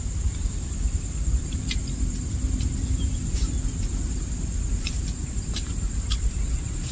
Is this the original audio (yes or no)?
no